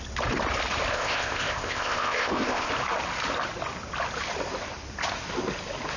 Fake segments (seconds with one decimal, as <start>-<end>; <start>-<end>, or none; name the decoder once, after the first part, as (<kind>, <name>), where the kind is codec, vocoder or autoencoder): 0.9-2.7 (codec, ZipCodec)